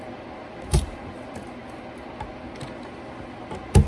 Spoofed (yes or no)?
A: no